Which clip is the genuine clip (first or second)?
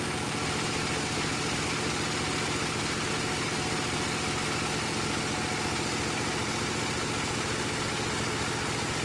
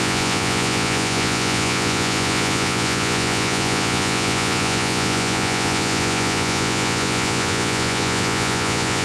first